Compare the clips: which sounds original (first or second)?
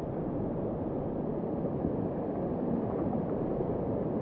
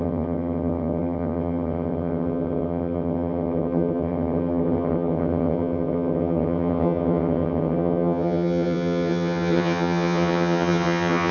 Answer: first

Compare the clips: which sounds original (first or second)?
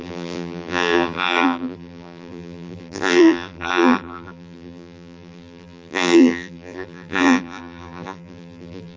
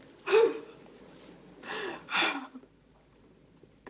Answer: second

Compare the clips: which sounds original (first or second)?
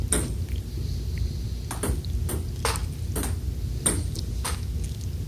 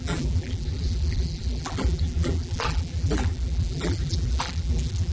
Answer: first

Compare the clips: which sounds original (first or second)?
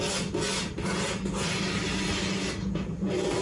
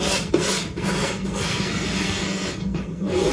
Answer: first